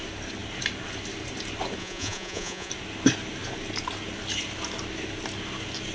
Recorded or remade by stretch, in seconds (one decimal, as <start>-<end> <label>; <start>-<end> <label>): 0.0-1.8 recorded; 1.8-2.7 remade; 2.7-5.9 recorded